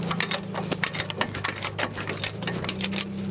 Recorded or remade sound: recorded